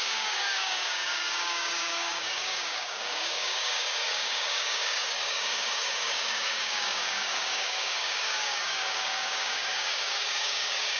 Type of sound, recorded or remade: remade